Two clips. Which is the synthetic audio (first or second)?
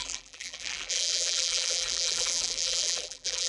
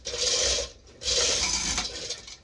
first